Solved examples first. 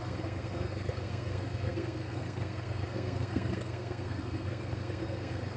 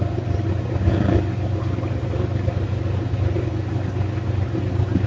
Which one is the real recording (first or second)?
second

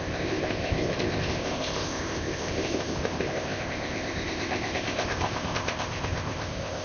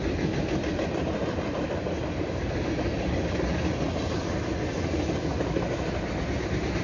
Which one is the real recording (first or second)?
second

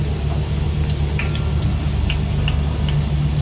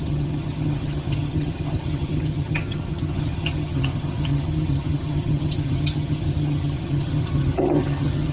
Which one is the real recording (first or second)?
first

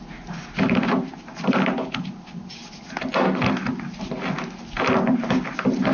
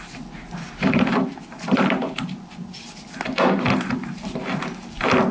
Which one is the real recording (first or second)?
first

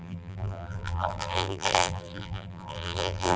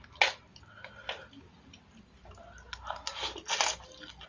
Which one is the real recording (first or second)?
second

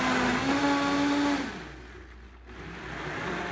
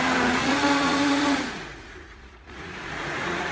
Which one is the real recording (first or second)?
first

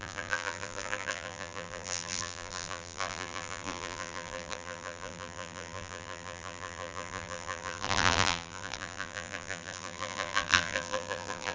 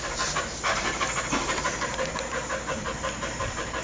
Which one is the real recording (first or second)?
second